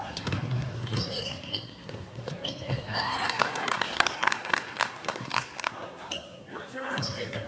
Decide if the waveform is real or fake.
fake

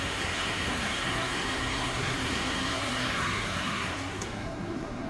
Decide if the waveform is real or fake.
fake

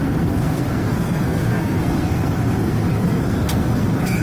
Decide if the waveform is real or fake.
fake